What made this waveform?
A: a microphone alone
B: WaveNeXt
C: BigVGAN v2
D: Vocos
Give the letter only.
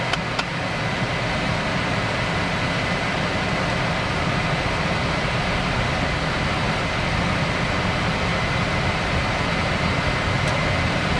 A